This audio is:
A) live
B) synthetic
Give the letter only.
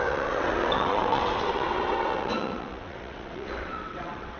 B